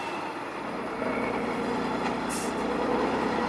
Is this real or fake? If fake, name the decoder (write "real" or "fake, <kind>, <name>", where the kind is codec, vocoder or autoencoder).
real